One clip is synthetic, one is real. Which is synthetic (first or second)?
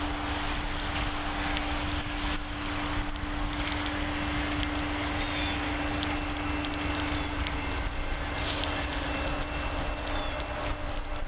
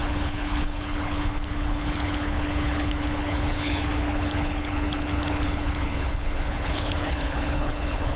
second